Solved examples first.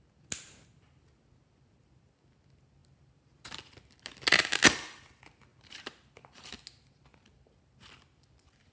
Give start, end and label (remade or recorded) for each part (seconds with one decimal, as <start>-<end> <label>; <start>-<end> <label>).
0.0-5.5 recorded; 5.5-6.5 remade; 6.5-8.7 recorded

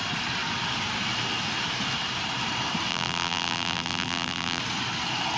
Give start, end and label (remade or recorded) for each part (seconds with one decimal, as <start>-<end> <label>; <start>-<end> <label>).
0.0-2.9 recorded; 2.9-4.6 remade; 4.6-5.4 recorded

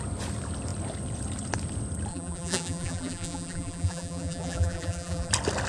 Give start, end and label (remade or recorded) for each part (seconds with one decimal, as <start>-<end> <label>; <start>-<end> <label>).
0.0-2.1 recorded; 2.1-5.3 remade; 5.3-5.7 recorded

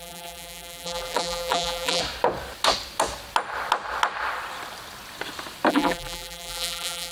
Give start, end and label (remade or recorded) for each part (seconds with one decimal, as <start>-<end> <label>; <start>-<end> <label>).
0.0-2.0 remade; 2.0-5.7 recorded; 5.7-7.1 remade

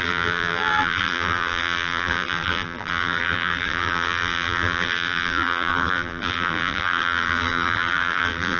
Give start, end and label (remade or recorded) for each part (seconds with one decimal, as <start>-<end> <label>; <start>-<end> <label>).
0.0-8.6 remade

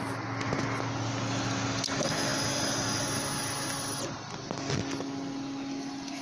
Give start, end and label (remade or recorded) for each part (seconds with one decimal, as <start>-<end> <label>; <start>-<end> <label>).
0.0-2.3 recorded; 2.3-4.7 remade; 4.7-6.2 recorded